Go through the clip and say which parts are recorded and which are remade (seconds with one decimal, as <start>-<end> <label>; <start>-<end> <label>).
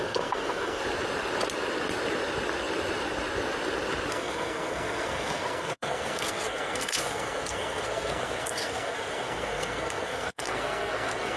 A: 0.0-0.8 remade; 0.8-4.1 recorded; 4.1-11.4 remade